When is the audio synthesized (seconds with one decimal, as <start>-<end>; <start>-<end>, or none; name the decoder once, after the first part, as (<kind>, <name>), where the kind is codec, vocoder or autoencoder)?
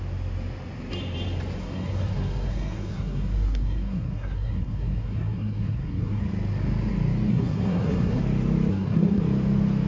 1.6-6.2 (codec, SNAC); 7.3-8.2; 8.7-9.2